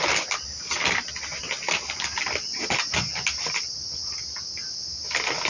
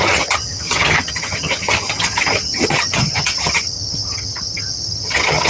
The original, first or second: first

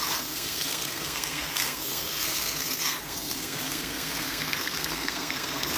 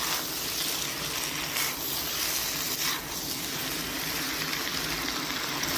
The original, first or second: second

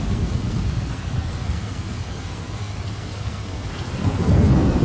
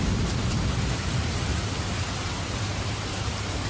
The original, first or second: second